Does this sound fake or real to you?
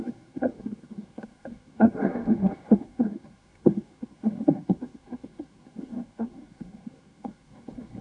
fake